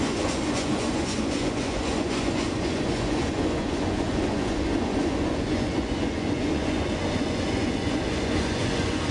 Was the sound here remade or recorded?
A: remade